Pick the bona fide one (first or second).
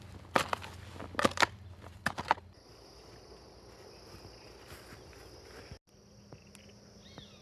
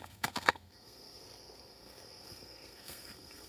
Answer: first